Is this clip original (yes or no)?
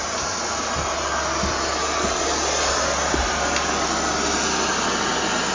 yes